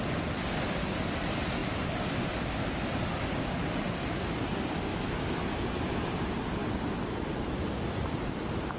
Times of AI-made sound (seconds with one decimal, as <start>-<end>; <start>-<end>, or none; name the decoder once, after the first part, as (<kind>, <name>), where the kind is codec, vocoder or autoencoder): 4.9-5.4 (autoencoder, DAC-VAE)